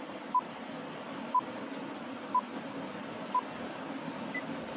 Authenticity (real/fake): real